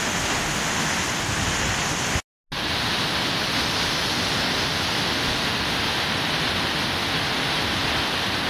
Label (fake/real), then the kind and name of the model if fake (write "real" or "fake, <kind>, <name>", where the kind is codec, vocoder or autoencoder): real